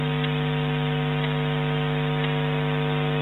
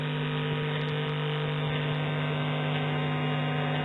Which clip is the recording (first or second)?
first